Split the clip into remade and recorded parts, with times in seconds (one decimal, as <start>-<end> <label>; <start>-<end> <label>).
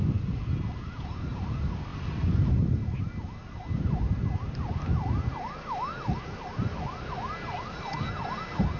0.0-8.8 recorded